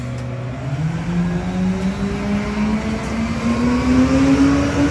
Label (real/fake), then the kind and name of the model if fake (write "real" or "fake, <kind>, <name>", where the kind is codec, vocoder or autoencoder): real